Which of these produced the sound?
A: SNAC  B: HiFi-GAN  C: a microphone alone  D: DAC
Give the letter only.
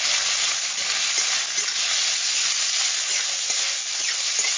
C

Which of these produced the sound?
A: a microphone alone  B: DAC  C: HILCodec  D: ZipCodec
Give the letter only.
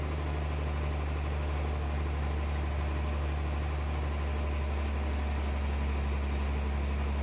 A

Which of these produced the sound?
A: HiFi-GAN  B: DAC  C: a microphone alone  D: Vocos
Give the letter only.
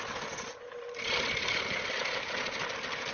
C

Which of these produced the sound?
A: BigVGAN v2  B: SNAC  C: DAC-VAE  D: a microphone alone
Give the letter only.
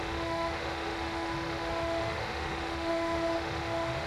C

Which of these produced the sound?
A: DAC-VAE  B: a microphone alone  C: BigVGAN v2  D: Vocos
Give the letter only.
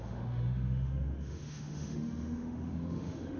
A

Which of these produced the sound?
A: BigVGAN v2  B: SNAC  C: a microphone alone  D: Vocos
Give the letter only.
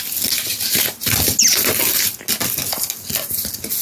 C